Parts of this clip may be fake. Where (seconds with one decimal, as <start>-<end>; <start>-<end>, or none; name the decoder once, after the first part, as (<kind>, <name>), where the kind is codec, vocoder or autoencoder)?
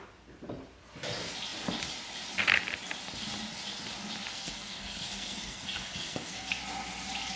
4.3-6.6 (codec, SNAC)